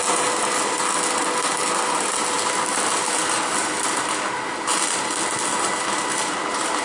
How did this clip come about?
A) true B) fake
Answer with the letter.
A